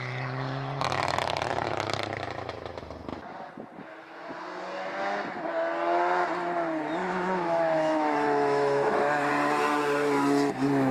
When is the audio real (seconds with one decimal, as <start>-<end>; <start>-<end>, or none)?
0.0-7.0; 9.3-10.9